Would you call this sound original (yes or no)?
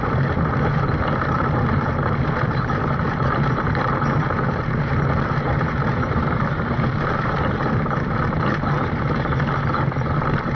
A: no